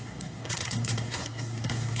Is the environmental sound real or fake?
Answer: fake